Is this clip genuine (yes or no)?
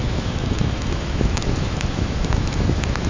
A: no